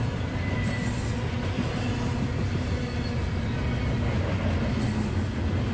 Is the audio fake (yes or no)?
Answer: no